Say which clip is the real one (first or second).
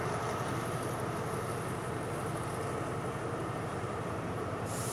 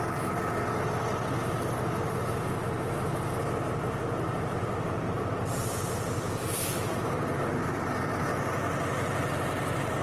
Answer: second